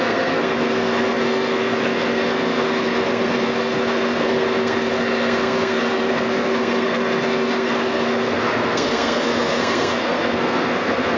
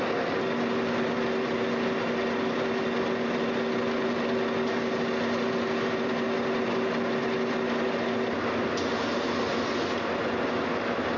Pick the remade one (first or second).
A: first